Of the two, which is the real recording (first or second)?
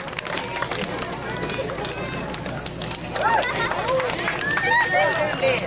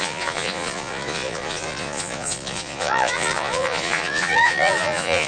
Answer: first